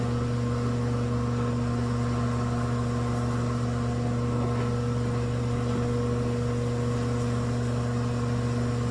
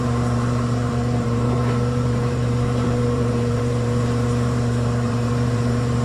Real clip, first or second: first